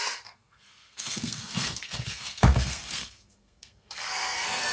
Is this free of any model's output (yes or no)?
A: no